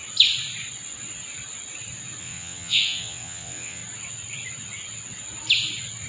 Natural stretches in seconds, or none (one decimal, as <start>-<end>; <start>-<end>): 0.0-2.2; 3.8-6.1